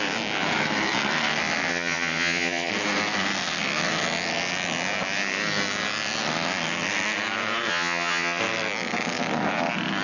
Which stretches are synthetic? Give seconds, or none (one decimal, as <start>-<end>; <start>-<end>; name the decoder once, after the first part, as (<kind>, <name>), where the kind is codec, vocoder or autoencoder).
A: 1.7-2.7 (vocoder, HiFi-GAN); 7.7-8.4